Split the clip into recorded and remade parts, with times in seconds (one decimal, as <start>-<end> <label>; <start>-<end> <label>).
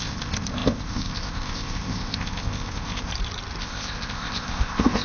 0.0-3.1 remade; 3.1-3.6 recorded; 3.6-5.0 remade